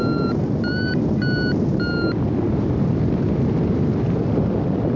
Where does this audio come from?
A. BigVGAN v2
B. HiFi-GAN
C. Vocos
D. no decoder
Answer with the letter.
D